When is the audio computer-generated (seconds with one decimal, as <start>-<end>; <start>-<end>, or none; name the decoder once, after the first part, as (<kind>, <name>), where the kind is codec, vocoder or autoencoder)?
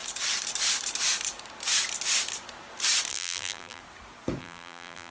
3.1-3.8 (vocoder, BigVGAN v2); 4.4-5.1